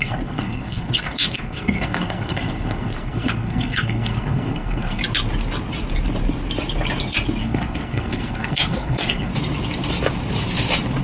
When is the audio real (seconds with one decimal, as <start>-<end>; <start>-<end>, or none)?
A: 5.0-7.4; 9.3-11.0